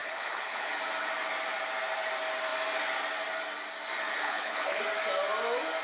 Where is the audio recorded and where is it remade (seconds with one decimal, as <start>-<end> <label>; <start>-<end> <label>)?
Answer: 0.0-0.7 remade; 0.7-4.1 recorded; 4.1-4.8 remade; 4.8-5.8 recorded